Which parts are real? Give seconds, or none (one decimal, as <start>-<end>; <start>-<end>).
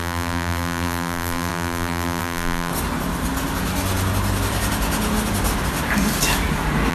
2.7-6.9